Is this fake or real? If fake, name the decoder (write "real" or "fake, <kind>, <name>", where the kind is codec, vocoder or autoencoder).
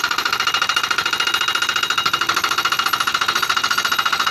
real